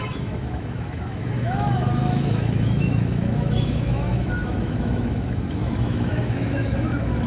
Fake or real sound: fake